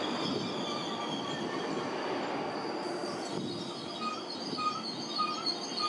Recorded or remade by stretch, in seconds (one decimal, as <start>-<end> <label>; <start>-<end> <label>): 0.0-5.9 recorded